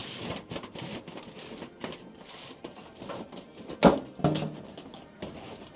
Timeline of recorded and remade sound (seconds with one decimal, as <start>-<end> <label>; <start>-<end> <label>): 0.0-5.8 recorded